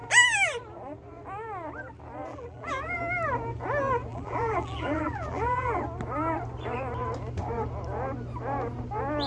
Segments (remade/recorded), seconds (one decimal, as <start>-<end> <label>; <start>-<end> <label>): 0.0-2.3 recorded; 2.3-3.0 remade; 3.0-4.1 recorded; 4.1-5.8 remade; 5.8-9.3 recorded